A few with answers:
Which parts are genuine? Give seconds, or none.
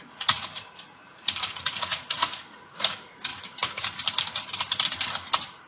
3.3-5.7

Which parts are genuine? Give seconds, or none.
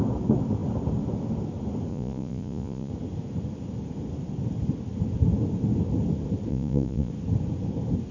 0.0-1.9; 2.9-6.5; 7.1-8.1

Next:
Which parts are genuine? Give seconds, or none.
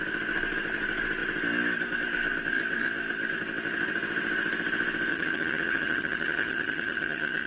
0.0-5.1